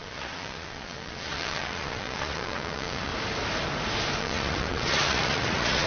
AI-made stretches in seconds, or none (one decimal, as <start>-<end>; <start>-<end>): 0.0-3.1; 4.2-5.9